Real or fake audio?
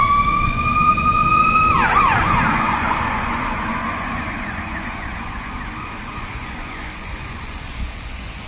fake